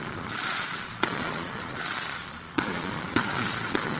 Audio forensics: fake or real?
fake